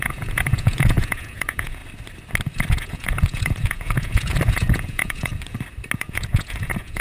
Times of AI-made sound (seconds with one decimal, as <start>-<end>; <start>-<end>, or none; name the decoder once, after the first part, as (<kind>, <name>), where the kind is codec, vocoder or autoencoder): 0.0-1.8 (vocoder, Vocos); 2.7-5.3; 6.0-7.0